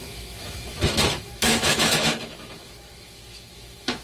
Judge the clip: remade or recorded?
remade